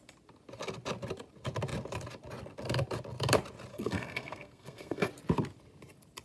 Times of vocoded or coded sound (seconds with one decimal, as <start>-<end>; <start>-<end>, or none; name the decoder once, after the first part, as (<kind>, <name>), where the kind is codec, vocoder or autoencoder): 3.7-5.1 (codec, SNAC)